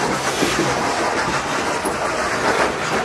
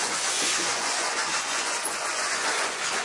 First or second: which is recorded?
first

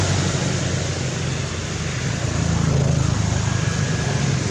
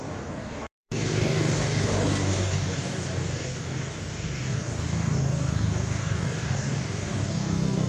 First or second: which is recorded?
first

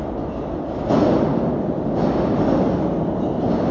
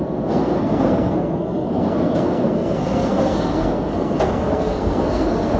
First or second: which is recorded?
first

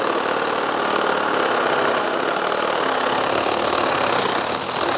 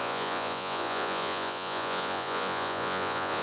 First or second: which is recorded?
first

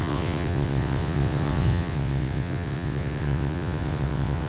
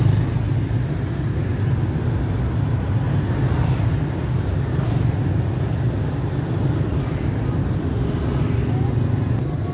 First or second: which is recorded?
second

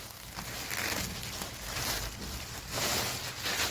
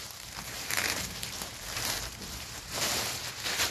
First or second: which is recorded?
first